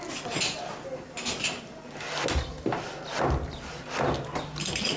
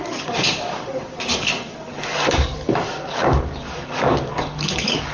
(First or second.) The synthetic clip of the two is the second